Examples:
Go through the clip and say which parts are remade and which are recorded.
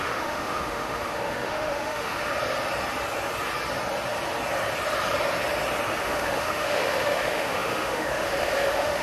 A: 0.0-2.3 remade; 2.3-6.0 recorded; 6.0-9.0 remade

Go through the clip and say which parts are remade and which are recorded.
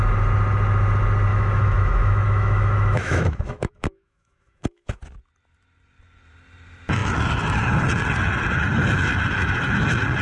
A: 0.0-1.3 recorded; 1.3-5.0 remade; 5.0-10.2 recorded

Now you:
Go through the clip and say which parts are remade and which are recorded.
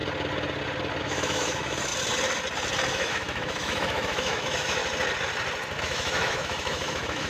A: 0.0-1.0 recorded; 1.0-1.9 remade; 1.9-2.9 recorded; 2.9-4.8 remade; 4.8-5.8 recorded; 5.8-7.3 remade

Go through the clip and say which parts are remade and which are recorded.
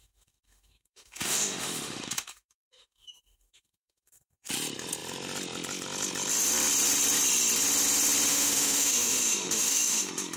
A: 0.0-4.5 remade; 4.5-8.3 recorded; 8.3-10.4 remade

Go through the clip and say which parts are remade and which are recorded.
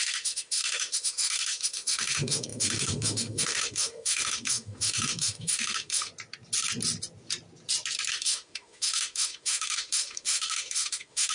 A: 0.0-6.1 remade; 6.1-8.1 recorded; 8.1-11.3 remade